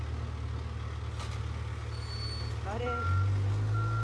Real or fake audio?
real